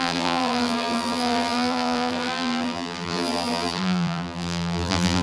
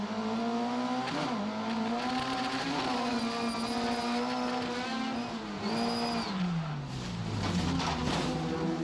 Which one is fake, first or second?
first